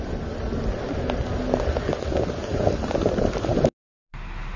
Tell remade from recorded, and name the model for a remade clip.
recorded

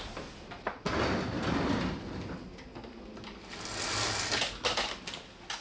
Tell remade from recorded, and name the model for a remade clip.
recorded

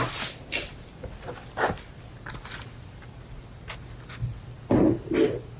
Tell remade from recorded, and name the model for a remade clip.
recorded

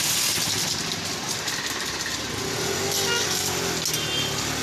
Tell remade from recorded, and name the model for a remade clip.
recorded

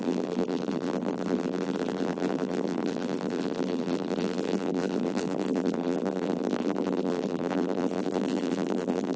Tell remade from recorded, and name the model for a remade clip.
remade, vocoder, BigVGAN v2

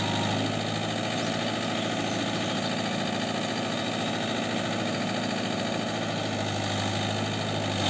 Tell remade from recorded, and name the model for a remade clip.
recorded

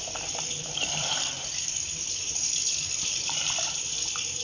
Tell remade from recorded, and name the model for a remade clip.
remade, vocoder, BigVGAN v2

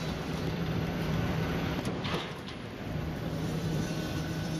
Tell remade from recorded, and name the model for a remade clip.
remade, vocoder, BigVGAN v2